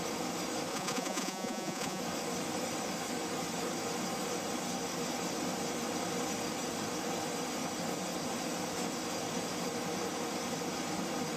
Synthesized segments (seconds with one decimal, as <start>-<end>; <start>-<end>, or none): 0.7-2.0